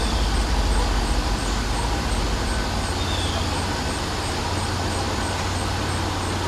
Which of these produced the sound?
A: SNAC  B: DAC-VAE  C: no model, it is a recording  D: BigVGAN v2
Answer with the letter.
C